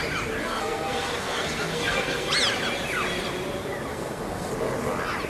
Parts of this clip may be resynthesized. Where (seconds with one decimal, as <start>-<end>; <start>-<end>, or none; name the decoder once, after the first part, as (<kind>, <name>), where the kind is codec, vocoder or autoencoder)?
0.4-2.3 (codec, SNAC); 3.9-4.5